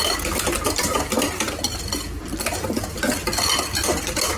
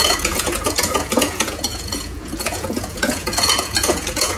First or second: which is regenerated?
second